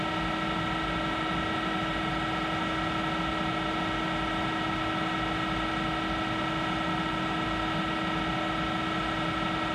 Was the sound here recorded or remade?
recorded